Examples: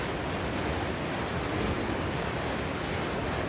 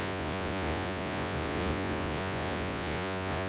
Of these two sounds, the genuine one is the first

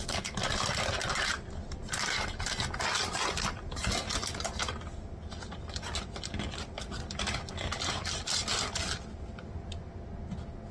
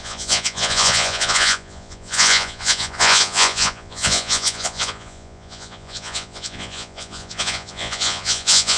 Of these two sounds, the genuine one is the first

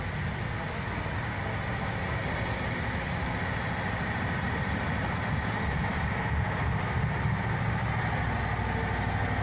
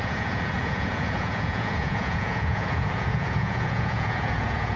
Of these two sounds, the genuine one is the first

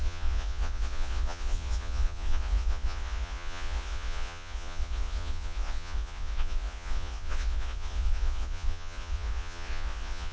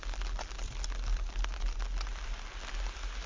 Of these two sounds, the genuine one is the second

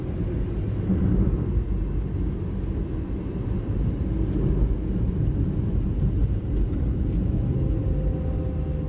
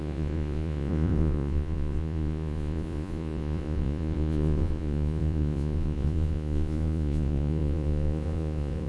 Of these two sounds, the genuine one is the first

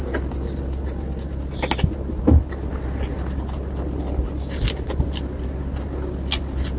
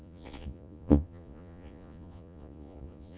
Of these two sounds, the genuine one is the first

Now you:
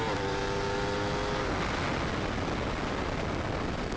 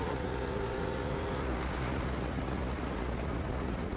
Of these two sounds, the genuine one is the first